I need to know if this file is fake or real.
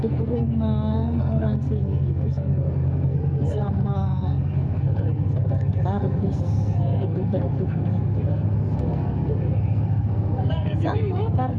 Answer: fake